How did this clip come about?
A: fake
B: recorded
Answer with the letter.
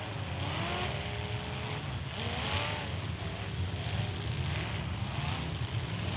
B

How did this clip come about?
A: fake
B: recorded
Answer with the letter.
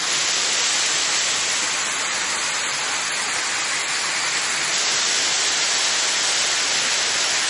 B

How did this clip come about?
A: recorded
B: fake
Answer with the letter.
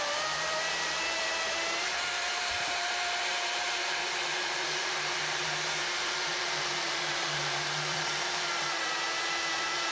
B